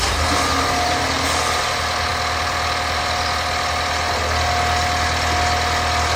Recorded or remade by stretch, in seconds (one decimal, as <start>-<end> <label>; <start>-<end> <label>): 0.0-6.2 recorded